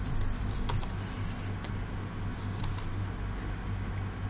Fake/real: real